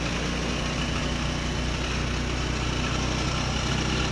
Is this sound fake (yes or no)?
no